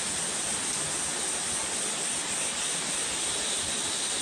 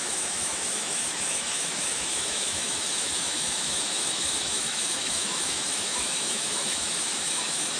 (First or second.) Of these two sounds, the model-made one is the second